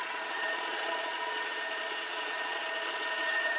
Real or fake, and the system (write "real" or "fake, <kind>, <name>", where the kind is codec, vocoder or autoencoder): fake, vocoder, Vocos